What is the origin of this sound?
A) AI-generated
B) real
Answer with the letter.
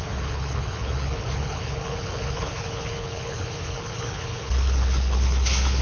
A